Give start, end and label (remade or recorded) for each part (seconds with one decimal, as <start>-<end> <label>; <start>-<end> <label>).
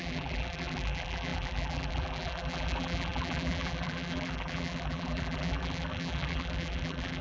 0.0-7.2 remade